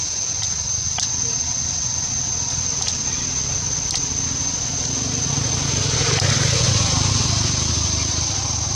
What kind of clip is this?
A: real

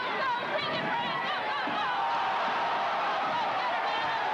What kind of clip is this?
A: real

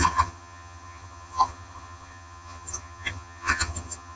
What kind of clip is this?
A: fake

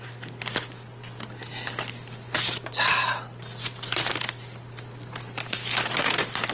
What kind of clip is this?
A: real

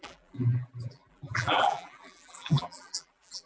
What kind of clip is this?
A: fake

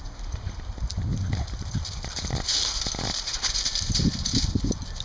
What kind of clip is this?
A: real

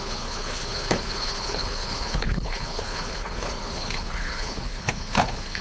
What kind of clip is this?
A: fake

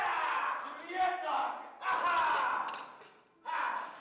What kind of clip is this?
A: real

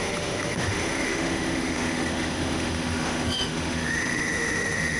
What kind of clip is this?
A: fake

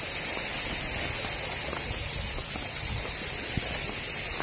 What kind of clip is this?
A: real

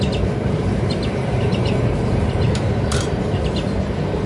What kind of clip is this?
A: fake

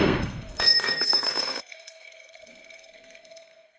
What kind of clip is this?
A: fake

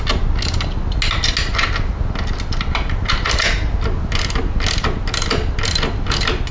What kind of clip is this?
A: real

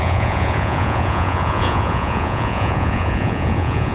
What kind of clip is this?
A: fake